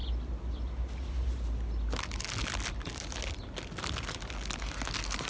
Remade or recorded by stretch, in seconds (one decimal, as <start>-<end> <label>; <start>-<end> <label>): 0.0-5.3 recorded